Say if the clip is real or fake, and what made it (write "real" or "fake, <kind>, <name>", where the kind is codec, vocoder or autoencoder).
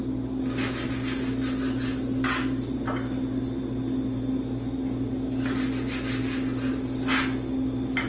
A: real